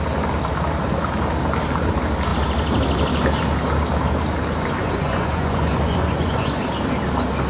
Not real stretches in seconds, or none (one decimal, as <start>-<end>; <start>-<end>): 4.8-6.6